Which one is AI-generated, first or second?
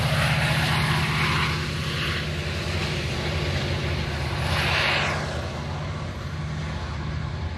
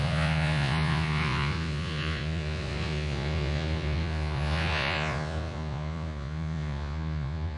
second